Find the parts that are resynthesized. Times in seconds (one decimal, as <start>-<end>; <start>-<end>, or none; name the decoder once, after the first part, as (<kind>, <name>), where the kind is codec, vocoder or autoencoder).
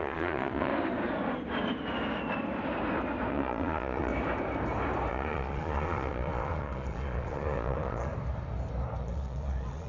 0.0-0.7 (vocoder, Vocos); 3.3-4.1; 5.1-8.1; 9.0-9.9